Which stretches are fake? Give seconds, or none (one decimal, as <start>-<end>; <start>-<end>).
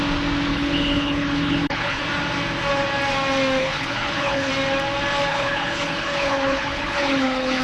0.5-2.0; 3.6-4.5; 5.3-7.6